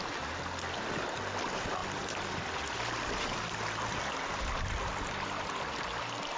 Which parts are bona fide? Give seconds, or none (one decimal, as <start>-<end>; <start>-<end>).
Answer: 0.0-6.4